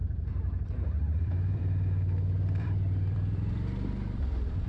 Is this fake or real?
fake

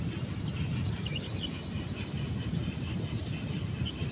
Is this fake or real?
real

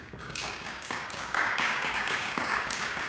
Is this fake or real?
fake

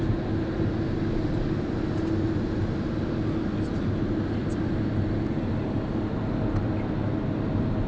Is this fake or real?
real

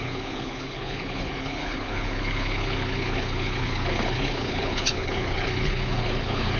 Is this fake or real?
fake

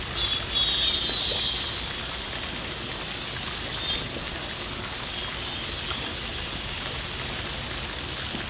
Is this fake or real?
real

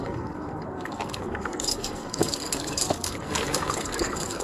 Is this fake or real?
fake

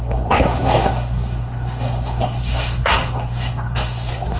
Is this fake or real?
fake